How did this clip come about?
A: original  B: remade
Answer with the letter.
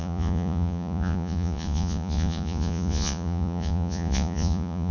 B